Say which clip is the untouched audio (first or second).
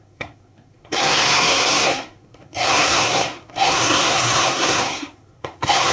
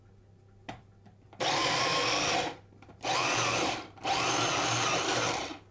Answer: second